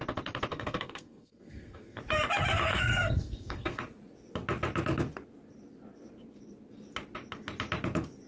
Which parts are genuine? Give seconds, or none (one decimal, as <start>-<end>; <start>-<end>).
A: 0.0-0.5; 2.0-2.7; 3.8-8.3

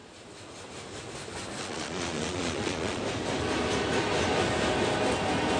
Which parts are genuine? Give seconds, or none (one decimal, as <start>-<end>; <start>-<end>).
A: 0.0-1.6; 3.0-5.6